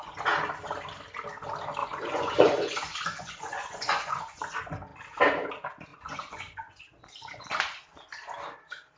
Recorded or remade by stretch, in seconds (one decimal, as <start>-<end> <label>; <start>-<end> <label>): 0.0-1.8 recorded; 1.8-4.4 remade; 4.4-5.9 recorded; 5.9-6.8 remade; 6.8-9.0 recorded

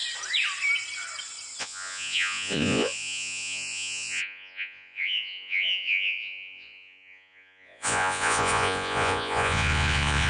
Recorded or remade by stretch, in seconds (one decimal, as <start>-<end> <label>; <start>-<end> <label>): 0.0-1.6 recorded; 1.6-10.3 remade

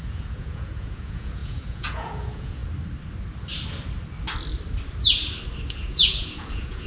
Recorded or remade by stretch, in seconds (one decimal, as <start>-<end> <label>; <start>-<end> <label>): 0.0-2.6 remade; 2.6-5.7 recorded; 5.7-6.9 remade

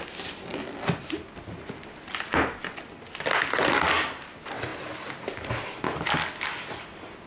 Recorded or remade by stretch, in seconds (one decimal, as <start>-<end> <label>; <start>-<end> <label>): 0.0-7.3 recorded

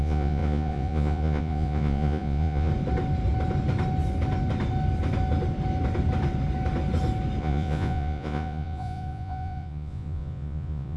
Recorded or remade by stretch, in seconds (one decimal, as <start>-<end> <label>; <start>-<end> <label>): 0.0-2.7 remade; 2.7-7.4 recorded; 7.4-11.0 remade

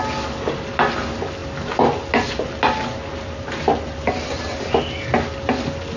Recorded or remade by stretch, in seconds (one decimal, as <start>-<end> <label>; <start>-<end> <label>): 0.0-6.0 recorded